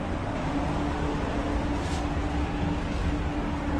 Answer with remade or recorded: recorded